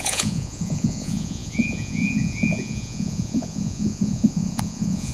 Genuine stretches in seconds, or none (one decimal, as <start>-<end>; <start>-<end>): none